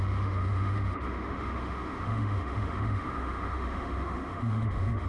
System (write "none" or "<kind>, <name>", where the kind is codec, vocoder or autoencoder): autoencoder, DAC-VAE